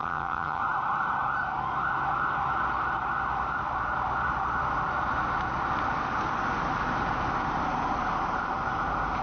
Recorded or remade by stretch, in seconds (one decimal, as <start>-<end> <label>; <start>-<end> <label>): 0.0-0.6 remade; 0.6-9.2 recorded